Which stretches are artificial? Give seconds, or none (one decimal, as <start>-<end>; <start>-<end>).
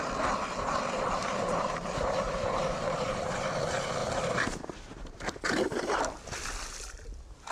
1.2-3.6; 4.0-6.0